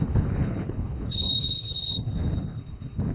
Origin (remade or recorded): remade